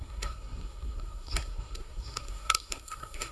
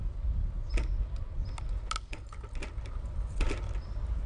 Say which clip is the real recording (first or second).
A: second